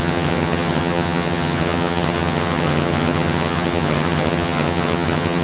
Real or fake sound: fake